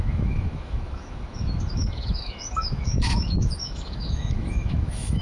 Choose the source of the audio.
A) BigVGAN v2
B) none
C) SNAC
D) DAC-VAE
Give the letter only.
D